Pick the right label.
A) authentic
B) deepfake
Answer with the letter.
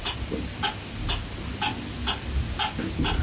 A